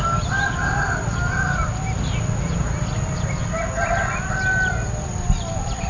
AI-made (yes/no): no